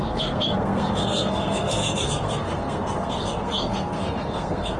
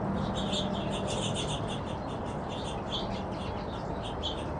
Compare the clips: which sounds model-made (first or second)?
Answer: first